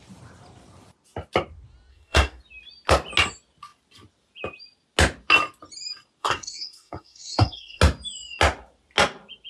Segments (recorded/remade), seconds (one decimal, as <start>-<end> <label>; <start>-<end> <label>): 0.0-1.9 recorded; 1.9-2.4 remade; 2.4-6.2 recorded; 6.2-7.8 remade; 7.8-9.5 recorded